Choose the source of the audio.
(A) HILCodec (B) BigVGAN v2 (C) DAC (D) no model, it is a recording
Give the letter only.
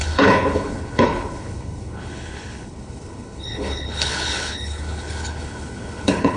A